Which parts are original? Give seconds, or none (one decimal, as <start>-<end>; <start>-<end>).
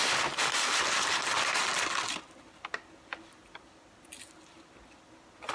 0.0-5.5